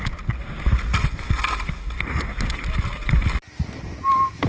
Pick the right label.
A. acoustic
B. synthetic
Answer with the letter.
A